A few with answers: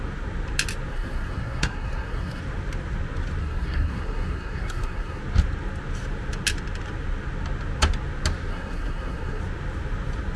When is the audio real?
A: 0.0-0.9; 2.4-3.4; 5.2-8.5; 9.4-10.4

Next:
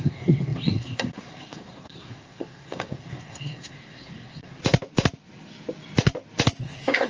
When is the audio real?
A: 4.6-6.6

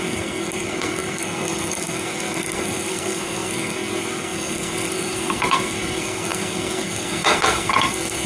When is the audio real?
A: none

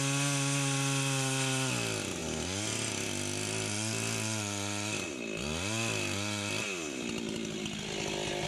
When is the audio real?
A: 0.0-8.5

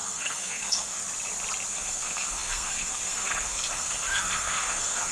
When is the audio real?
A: 1.0-1.7

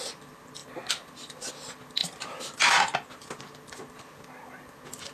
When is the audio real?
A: 0.0-5.1

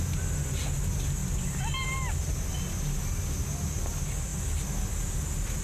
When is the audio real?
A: 0.0-5.6